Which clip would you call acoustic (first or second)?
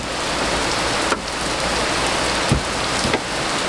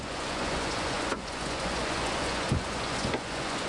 first